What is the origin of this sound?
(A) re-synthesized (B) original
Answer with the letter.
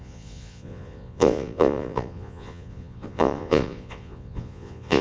A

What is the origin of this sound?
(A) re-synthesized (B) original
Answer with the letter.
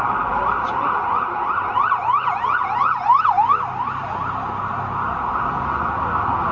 B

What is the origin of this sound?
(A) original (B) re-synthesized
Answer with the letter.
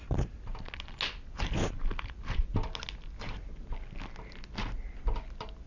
A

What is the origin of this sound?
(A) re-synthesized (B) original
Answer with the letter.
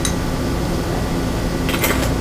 B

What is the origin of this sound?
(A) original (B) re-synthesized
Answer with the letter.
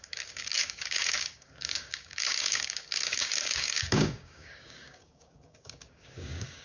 B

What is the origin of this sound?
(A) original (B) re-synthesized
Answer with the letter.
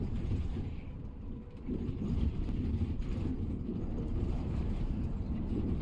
B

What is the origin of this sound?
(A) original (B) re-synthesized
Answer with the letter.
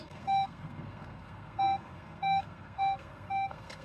B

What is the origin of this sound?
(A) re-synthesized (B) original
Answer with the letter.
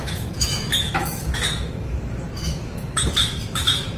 A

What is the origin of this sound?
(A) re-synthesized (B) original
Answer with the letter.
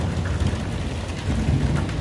B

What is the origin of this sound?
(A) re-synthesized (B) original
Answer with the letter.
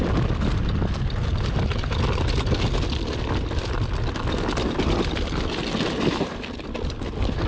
B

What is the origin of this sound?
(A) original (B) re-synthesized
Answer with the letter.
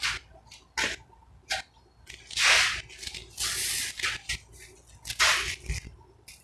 A